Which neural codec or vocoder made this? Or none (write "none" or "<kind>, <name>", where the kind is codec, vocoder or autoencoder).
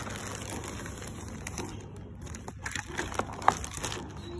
none